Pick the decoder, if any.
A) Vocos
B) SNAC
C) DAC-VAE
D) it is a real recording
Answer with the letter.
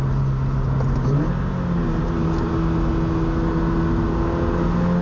D